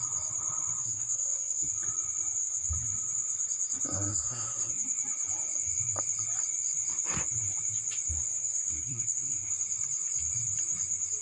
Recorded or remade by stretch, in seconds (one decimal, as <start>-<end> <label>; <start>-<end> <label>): 0.0-0.8 recorded; 0.8-1.7 remade; 1.7-4.1 recorded; 4.1-4.7 remade; 4.7-8.4 recorded; 8.4-9.5 remade; 9.5-11.2 recorded